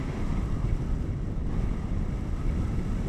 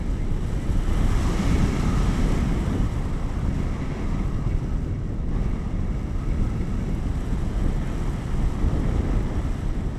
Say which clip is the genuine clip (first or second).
second